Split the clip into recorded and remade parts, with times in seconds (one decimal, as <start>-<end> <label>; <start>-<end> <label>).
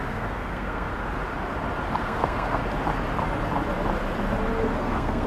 0.0-0.9 remade; 0.9-2.0 recorded; 2.0-2.6 remade; 2.6-4.8 recorded; 4.8-5.3 remade